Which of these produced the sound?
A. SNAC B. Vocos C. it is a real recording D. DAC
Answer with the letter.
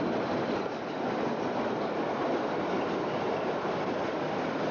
C